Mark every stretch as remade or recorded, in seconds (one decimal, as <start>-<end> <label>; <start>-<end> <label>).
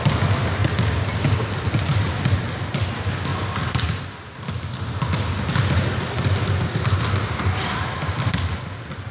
0.0-9.1 recorded